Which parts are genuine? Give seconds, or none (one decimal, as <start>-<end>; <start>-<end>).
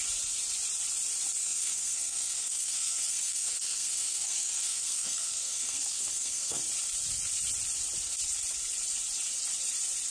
0.0-1.4; 6.6-10.1